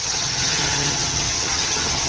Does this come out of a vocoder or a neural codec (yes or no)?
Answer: yes